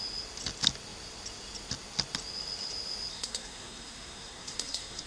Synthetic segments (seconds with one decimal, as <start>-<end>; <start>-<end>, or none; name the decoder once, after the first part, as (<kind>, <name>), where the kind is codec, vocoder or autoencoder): 3.1-5.1 (codec, SNAC)